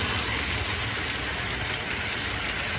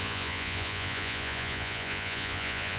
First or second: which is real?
first